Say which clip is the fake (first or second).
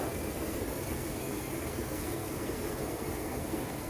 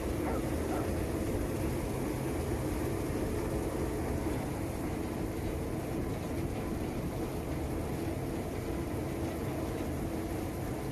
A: first